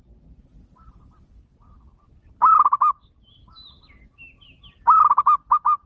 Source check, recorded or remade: recorded